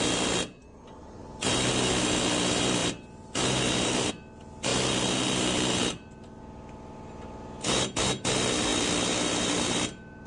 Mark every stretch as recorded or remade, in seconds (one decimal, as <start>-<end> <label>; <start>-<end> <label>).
0.0-0.6 recorded; 0.6-1.7 remade; 1.7-2.8 recorded; 2.8-4.1 remade; 4.1-4.7 recorded; 4.7-6.4 remade; 6.4-10.3 recorded